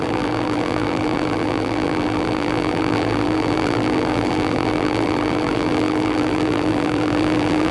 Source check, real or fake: fake